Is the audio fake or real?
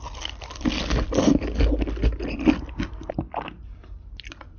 real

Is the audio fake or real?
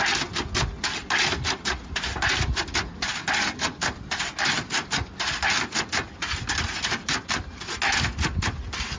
real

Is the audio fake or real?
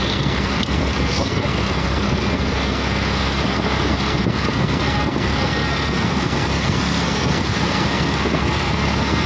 fake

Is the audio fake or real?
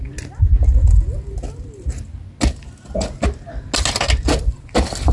real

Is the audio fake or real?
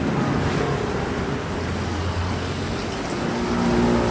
real